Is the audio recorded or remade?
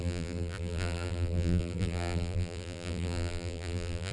remade